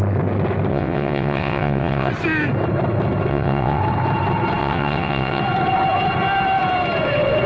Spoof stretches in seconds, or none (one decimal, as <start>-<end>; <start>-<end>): 0.7-2.1; 3.3-3.8; 4.6-5.4